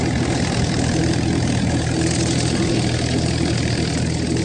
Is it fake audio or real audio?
real